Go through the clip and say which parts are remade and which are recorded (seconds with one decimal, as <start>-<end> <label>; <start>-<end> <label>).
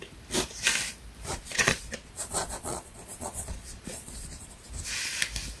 0.0-1.3 recorded; 1.3-4.7 remade; 4.7-5.6 recorded